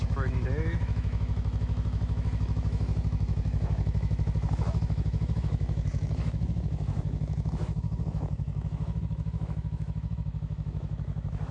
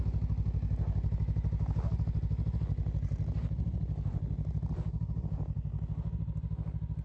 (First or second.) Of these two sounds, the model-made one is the first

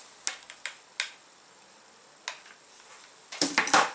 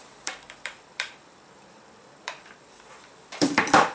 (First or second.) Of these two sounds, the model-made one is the second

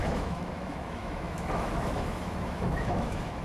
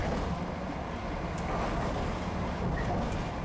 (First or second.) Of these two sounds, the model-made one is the first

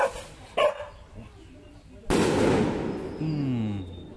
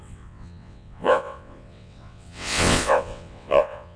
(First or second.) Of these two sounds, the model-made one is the second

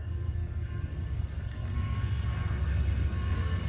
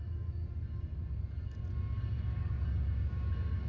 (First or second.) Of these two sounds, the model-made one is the first